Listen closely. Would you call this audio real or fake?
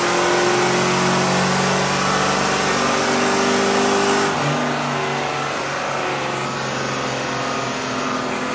real